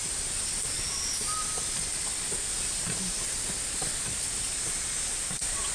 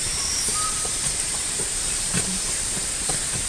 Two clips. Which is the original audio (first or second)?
first